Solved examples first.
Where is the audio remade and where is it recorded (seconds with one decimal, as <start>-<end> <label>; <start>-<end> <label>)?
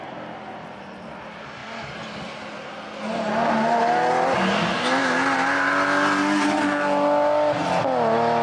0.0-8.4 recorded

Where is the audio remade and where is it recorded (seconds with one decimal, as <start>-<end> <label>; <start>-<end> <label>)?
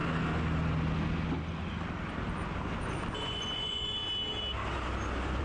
0.0-3.2 recorded; 3.2-4.0 remade; 4.0-5.4 recorded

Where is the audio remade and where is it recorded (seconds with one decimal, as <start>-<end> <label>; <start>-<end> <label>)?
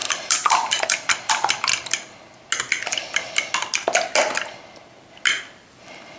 0.0-1.7 remade; 1.7-5.4 recorded; 5.4-6.2 remade